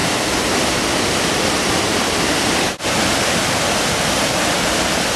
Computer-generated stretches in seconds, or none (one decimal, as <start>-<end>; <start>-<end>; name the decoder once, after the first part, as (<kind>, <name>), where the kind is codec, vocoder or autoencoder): none

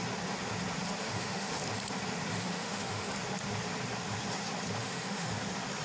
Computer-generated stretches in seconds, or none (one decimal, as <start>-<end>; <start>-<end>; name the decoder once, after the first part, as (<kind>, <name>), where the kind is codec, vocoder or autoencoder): 1.0-1.6 (autoencoder, DAC-VAE); 2.3-3.1; 4.8-5.3

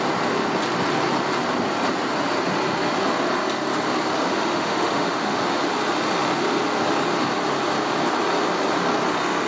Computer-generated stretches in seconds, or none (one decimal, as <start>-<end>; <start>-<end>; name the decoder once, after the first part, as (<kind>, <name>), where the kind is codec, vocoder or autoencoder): 4.3-5.4 (autoencoder, DAC-VAE)

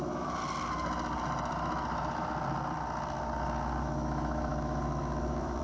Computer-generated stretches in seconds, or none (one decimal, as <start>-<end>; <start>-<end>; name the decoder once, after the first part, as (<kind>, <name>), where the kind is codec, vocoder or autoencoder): 0.0-0.4 (autoencoder, DAC-VAE); 3.8-5.6